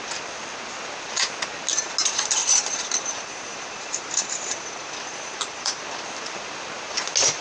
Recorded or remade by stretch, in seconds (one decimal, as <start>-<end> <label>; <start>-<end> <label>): 0.0-2.4 recorded; 2.4-5.8 remade; 5.8-7.4 recorded